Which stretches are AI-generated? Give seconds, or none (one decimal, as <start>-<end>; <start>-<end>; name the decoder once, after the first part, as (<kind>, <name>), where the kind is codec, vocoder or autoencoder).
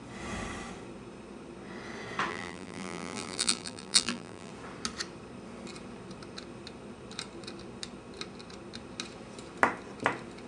2.3-4.5 (vocoder, BigVGAN v2)